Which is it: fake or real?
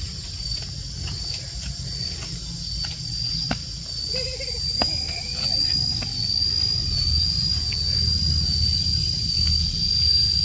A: real